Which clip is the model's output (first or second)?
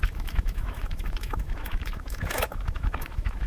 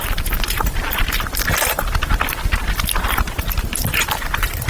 first